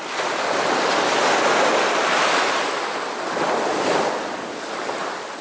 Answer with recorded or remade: recorded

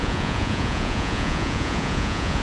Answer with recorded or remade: remade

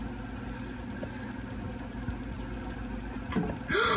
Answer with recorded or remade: recorded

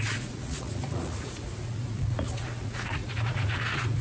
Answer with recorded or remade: remade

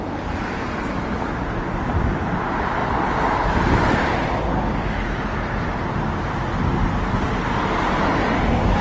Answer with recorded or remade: recorded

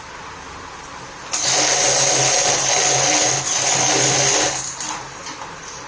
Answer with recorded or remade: recorded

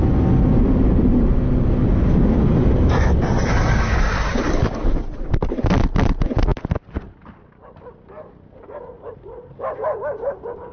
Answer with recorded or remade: recorded